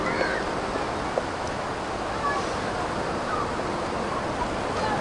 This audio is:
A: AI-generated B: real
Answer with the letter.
B